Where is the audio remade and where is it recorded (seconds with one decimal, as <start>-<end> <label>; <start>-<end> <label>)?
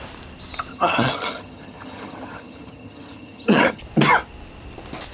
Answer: 0.0-0.7 recorded; 0.7-3.8 remade; 3.8-5.1 recorded